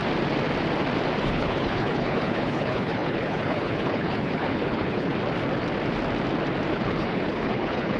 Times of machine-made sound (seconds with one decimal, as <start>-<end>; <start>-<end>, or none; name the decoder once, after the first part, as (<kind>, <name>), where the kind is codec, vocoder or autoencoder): 1.2-5.1 (codec, HILCodec); 6.7-8.0